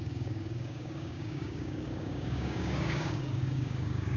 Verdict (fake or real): fake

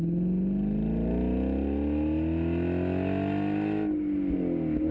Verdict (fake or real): real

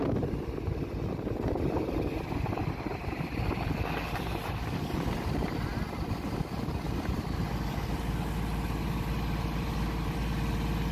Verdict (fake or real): real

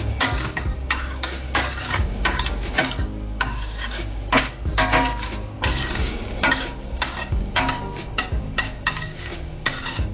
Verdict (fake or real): fake